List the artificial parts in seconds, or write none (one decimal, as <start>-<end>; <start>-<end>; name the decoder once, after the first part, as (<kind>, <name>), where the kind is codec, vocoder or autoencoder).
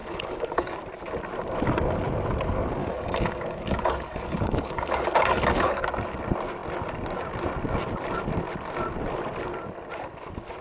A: 0.0-0.8 (codec, DAC); 2.8-5.9